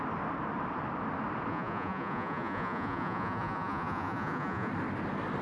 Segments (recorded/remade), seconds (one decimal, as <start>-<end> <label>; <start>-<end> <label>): 0.0-1.5 recorded; 1.5-4.7 remade; 4.7-5.4 recorded